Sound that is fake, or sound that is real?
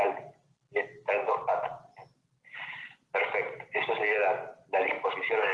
real